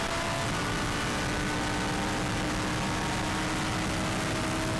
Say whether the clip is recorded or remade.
recorded